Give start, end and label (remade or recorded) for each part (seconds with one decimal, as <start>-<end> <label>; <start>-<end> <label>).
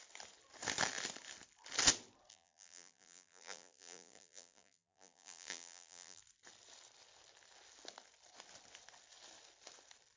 0.0-2.3 recorded; 2.3-6.2 remade; 6.2-10.2 recorded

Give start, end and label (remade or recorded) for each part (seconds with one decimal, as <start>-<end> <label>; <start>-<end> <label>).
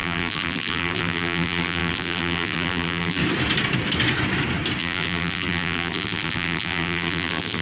0.0-3.2 remade; 3.2-4.8 recorded; 4.8-7.6 remade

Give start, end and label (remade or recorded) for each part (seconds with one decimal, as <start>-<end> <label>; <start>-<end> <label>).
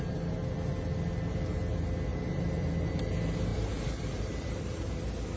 0.0-2.1 recorded; 2.1-3.0 remade; 3.0-3.5 recorded; 3.5-4.9 remade; 4.9-5.4 recorded